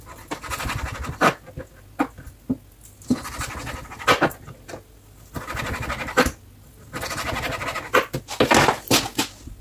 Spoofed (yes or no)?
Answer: no